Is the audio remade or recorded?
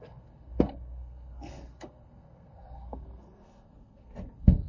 remade